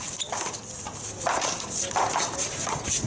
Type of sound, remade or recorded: recorded